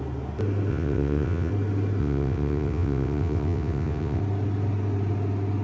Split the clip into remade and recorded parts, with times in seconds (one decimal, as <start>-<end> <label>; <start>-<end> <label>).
0.0-0.7 recorded; 0.7-1.5 remade; 1.5-2.0 recorded; 2.0-4.2 remade; 4.2-5.6 recorded